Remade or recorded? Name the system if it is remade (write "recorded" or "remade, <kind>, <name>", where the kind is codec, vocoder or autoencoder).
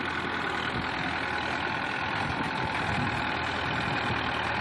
recorded